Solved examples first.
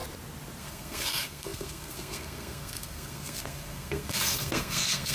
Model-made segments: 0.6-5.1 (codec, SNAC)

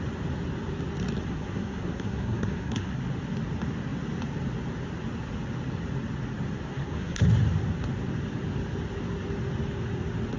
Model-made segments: 1.3-3.0 (codec, SNAC); 6.7-7.2